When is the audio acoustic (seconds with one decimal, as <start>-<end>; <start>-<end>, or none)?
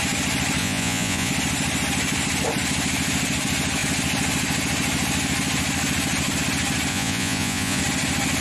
0.0-0.6; 1.3-6.9; 7.8-8.4